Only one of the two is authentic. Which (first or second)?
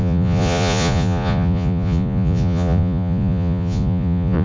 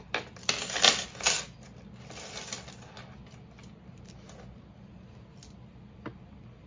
second